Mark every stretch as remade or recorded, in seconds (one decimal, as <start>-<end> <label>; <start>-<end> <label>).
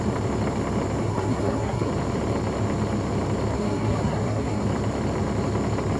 0.0-1.0 recorded; 1.0-1.9 remade; 1.9-3.5 recorded; 3.5-4.6 remade; 4.6-6.0 recorded